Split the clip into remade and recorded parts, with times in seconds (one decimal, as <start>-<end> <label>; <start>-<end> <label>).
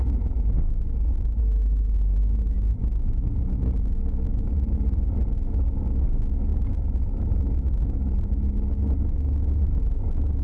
0.0-4.3 recorded; 4.3-5.0 remade; 5.0-6.5 recorded; 6.5-7.4 remade; 7.4-10.4 recorded